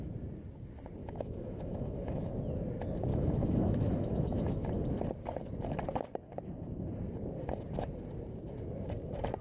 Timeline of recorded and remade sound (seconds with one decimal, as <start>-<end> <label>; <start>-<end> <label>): 0.0-1.0 recorded; 1.0-2.3 remade; 2.3-3.1 recorded; 3.1-4.7 remade; 4.7-9.4 recorded